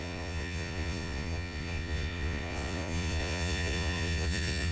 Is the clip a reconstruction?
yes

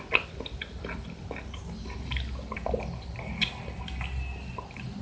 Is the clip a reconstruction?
no